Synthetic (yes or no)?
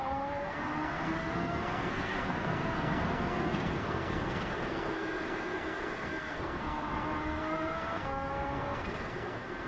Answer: yes